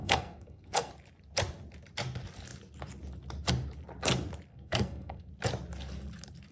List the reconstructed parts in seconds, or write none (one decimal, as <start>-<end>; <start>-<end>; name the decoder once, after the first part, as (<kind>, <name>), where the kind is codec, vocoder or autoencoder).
0.0-0.9 (codec, SNAC); 4.5-5.3